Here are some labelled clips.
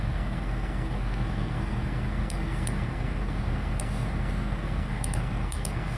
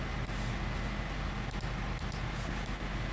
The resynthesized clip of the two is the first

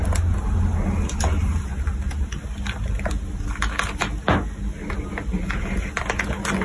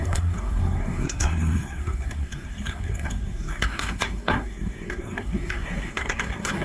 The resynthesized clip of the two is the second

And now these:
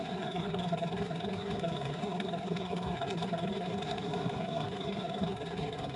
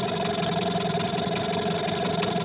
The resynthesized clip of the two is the first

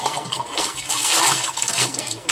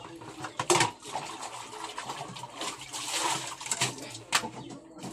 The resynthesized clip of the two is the first